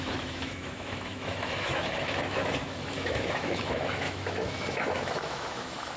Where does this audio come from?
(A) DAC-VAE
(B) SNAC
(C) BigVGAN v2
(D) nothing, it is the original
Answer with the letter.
A